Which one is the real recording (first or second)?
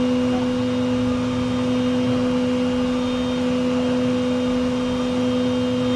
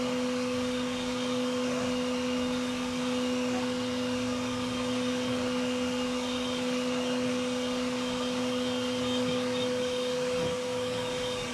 first